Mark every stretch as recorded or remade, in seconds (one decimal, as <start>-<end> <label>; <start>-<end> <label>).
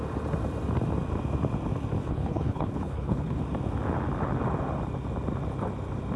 0.0-2.0 recorded; 2.0-3.4 remade; 3.4-6.2 recorded